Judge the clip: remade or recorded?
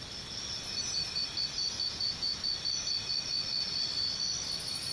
recorded